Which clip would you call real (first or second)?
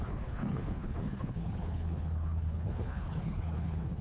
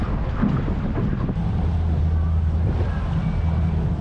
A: second